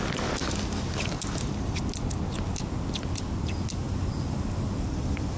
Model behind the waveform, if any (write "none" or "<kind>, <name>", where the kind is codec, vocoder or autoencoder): none